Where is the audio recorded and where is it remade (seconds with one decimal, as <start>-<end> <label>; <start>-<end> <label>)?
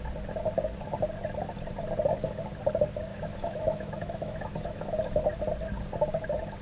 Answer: 0.0-3.1 recorded; 3.1-5.2 remade; 5.2-6.6 recorded